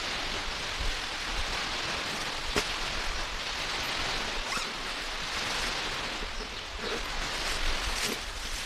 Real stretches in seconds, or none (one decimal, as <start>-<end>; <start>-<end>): 0.0-8.7